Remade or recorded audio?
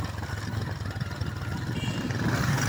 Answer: recorded